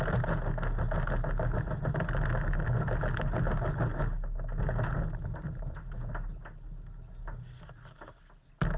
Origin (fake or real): real